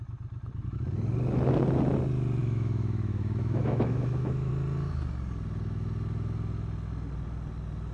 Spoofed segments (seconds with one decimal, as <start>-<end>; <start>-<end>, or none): 2.4-4.5